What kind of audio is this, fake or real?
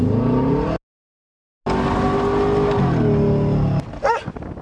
real